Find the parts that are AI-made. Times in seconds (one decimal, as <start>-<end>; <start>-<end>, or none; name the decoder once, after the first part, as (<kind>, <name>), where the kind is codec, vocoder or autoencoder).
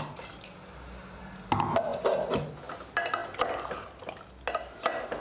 none